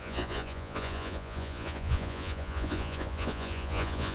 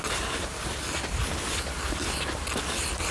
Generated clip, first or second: first